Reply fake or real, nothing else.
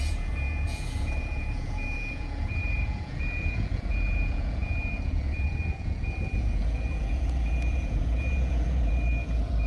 fake